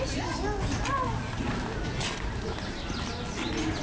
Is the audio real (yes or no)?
yes